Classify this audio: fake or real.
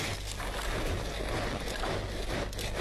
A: real